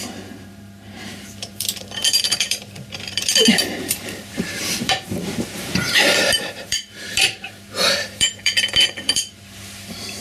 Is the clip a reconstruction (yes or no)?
yes